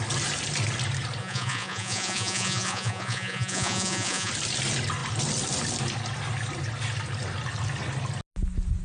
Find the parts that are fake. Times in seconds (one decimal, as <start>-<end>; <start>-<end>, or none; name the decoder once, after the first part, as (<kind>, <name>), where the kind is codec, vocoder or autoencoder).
1.2-4.3 (vocoder, Vocos)

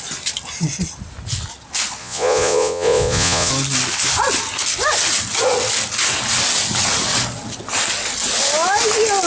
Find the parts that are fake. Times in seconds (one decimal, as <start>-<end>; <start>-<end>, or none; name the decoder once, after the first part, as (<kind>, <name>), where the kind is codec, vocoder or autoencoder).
2.0-3.5 (vocoder, Vocos)

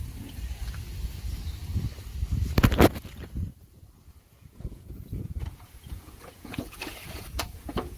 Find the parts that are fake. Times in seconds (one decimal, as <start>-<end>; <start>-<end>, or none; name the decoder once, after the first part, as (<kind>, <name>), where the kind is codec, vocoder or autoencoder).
3.5-8.0 (vocoder, Vocos)

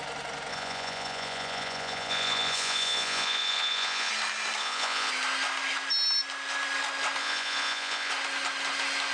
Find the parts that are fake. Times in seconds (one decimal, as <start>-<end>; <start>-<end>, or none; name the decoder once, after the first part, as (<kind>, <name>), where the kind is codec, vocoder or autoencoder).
0.5-4.1 (vocoder, Vocos); 4.6-5.1; 7.2-8.1

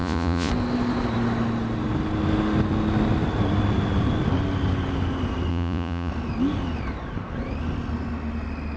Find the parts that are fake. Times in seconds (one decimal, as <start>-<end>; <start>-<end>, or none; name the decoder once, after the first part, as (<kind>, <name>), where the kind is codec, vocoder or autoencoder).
0.0-0.5 (vocoder, Vocos); 5.5-6.1

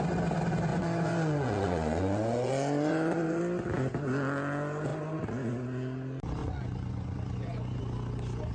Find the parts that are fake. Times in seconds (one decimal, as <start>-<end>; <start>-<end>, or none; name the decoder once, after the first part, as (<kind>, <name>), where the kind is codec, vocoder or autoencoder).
0.7-3.4 (vocoder, Vocos); 6.4-7.8

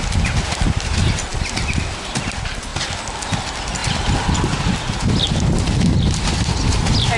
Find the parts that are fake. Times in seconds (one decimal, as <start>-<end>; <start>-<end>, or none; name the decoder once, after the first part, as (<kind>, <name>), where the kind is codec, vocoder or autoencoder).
none

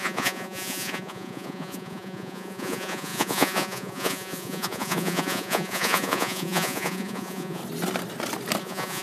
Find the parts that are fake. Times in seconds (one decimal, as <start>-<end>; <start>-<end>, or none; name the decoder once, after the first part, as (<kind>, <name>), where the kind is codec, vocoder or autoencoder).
0.0-7.6 (vocoder, Vocos); 8.6-9.0